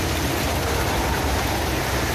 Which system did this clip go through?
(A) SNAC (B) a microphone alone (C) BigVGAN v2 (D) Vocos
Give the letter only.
B